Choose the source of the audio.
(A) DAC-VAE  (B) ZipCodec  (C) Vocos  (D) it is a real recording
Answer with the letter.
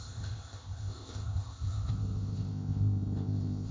B